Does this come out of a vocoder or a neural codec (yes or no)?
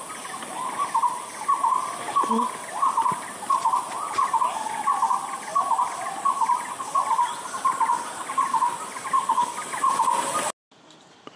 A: no